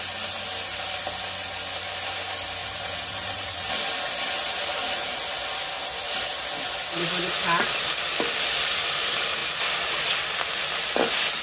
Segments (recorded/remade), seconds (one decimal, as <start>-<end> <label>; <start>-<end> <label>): 0.0-2.6 recorded; 2.6-3.7 remade; 3.7-11.4 recorded